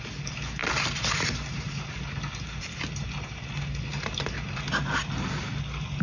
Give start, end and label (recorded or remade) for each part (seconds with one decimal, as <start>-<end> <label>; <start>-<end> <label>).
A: 0.0-6.0 recorded